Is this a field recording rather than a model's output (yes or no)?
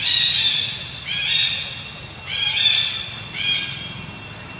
yes